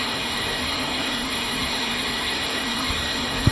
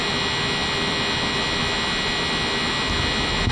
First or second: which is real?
second